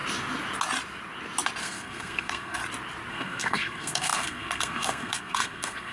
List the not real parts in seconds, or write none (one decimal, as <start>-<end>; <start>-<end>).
1.6-2.6; 3.1-5.9